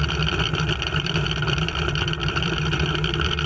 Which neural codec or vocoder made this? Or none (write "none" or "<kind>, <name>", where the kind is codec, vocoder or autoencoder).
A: vocoder, BigVGAN v2